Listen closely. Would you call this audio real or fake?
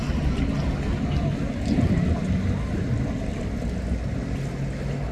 real